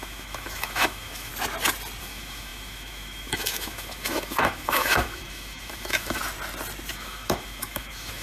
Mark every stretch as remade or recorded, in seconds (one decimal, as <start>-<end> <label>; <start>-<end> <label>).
0.0-1.3 remade; 1.3-2.0 recorded; 2.0-6.2 remade; 6.2-6.9 recorded; 6.9-8.2 remade